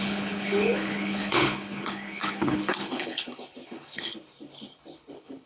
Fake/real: fake